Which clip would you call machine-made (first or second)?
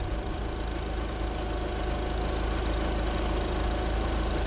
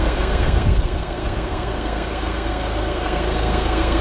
second